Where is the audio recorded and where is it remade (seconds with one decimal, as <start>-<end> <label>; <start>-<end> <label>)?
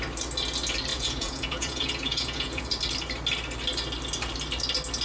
0.0-0.9 recorded; 0.9-2.6 remade; 2.6-5.0 recorded